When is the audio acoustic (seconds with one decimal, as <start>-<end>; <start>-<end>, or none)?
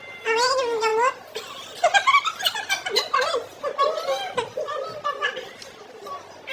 0.0-6.5